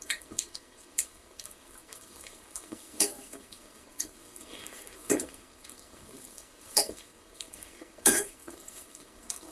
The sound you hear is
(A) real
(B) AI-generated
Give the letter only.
B